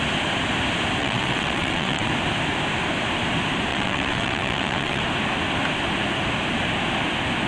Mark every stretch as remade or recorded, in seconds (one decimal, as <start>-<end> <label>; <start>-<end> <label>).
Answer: 0.0-1.0 recorded; 1.0-2.1 remade; 2.1-3.7 recorded; 3.7-5.0 remade; 5.0-7.5 recorded